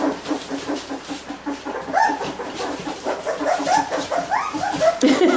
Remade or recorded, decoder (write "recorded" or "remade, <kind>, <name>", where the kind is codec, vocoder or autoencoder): remade, vocoder, BigVGAN v2